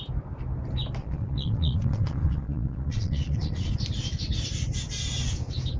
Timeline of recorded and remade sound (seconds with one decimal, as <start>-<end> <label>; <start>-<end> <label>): 0.0-1.0 recorded; 1.0-3.7 remade; 3.7-5.8 recorded